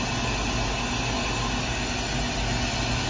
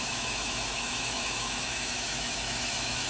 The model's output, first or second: second